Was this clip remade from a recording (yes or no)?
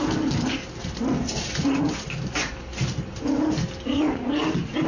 no